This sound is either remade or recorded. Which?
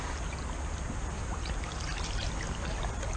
recorded